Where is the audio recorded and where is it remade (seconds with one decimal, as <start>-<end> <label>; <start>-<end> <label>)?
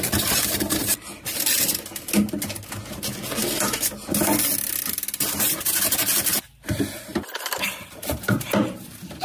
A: 0.0-7.1 recorded; 7.1-9.2 remade